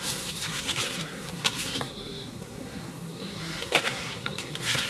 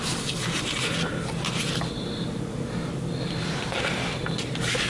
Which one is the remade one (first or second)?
first